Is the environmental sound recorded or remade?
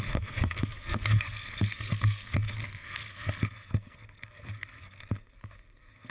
remade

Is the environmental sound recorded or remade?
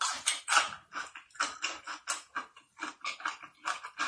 recorded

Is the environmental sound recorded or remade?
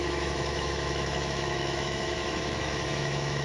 remade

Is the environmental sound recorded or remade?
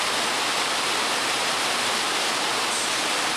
recorded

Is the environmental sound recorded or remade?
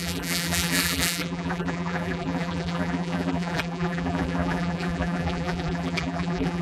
remade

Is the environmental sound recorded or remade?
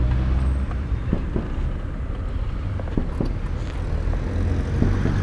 recorded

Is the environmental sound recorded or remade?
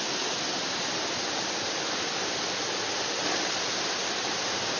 recorded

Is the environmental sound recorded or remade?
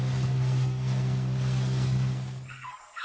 remade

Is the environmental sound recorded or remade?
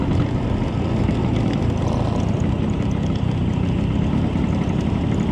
remade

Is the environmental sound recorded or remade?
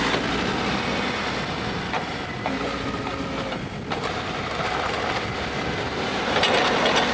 recorded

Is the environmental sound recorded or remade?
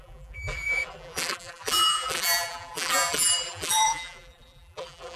remade